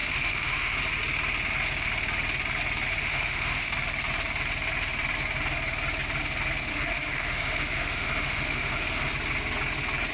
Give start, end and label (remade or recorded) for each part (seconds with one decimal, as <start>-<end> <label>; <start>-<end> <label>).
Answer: 0.0-0.8 remade; 0.8-3.0 recorded; 3.0-3.7 remade; 3.7-6.7 recorded; 6.7-9.1 remade; 9.1-10.1 recorded